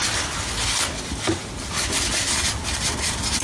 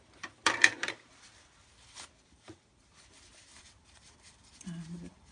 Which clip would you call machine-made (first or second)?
second